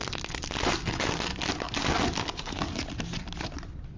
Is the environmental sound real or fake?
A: real